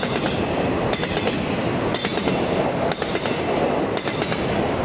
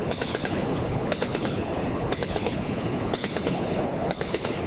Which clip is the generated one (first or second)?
second